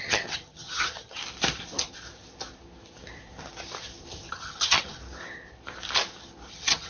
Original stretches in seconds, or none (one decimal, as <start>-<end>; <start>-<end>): 1.2-4.3; 5.0-6.5